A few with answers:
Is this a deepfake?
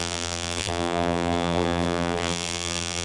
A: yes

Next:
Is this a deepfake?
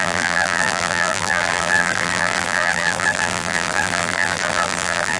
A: yes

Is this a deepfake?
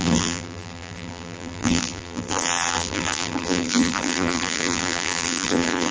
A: yes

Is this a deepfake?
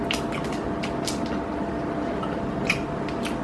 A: no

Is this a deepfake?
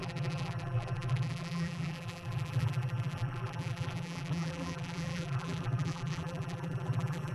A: yes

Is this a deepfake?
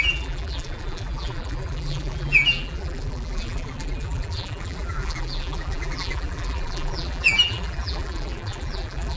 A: yes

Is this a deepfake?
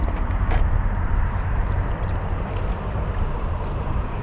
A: yes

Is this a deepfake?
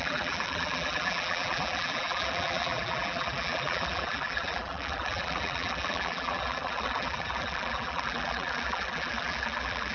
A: yes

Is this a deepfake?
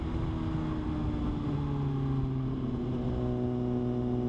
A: no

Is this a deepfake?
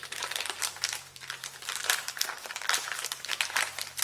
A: yes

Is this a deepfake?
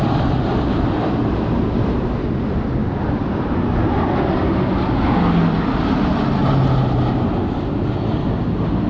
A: no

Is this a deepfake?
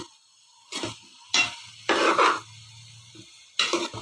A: no